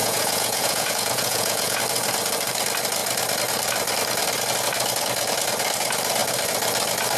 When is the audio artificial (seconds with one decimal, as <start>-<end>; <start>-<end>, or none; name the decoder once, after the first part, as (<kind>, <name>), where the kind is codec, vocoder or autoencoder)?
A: 0.0-1.8 (vocoder, Vocos)